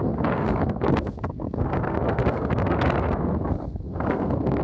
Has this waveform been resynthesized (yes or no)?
yes